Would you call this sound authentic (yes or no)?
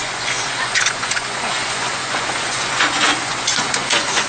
no